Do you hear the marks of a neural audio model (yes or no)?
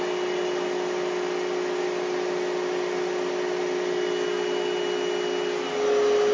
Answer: no